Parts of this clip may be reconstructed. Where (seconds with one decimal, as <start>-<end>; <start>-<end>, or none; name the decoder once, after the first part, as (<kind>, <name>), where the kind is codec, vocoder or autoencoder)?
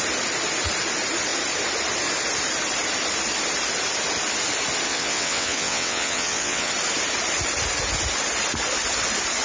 4.9-6.7 (vocoder, WaveNeXt)